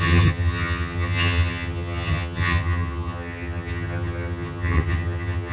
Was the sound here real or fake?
fake